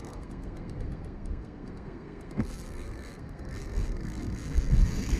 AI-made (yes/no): yes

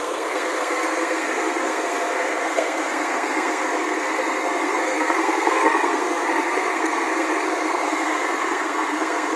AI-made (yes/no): yes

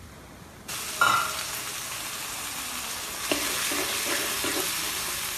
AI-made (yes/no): no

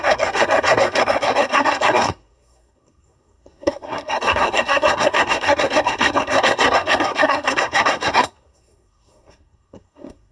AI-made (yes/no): yes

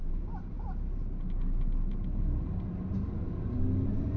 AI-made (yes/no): no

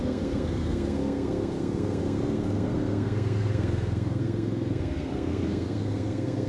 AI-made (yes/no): yes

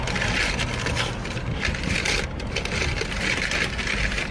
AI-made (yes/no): no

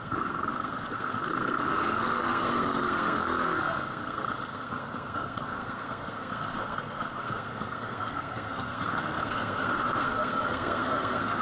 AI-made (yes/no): yes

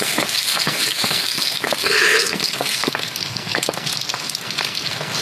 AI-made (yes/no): yes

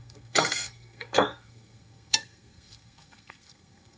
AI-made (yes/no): yes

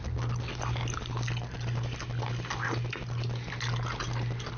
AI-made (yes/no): no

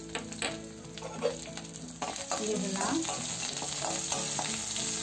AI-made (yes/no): no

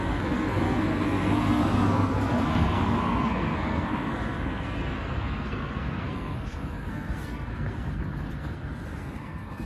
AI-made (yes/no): yes